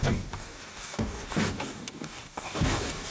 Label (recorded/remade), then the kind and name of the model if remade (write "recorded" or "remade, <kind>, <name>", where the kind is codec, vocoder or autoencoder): remade, codec, DAC